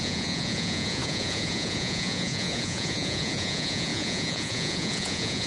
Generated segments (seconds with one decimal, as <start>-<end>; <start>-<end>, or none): 0.0-5.5